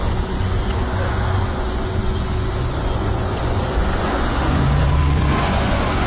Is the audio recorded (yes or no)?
no